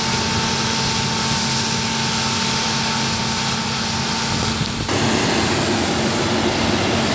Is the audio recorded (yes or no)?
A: yes